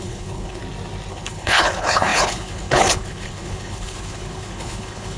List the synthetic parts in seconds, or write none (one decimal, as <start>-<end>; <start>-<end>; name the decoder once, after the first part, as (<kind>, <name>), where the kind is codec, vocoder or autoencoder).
0.0-0.6 (codec, HILCodec); 1.1-5.2